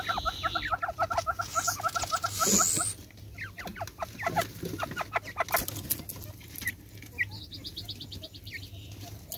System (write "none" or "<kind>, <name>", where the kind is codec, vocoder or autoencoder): none